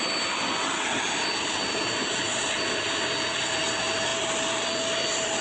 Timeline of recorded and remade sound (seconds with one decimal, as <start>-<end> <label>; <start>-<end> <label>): 0.0-5.4 recorded